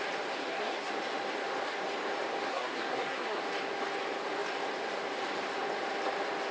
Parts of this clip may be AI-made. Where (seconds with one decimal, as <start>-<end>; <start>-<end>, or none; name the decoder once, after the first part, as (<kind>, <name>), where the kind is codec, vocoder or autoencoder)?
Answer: 0.4-0.9 (codec, SNAC); 2.5-3.4